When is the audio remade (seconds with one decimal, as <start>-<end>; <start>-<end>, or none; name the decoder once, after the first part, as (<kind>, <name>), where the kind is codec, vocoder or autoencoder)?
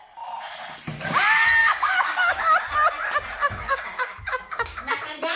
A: 1.6-2.4 (codec, DAC); 3.6-4.9